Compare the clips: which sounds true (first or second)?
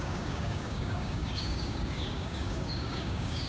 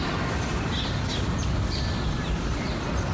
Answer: second